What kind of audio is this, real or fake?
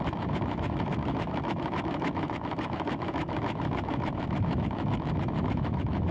fake